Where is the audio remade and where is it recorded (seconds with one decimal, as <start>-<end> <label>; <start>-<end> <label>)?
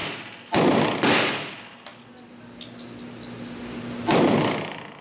0.0-5.0 recorded